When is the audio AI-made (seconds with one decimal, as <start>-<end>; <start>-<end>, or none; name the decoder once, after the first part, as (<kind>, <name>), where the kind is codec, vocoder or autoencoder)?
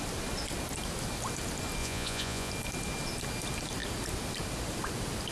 1.8-2.5 (vocoder, Vocos)